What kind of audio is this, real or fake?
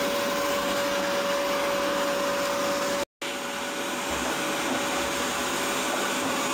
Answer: real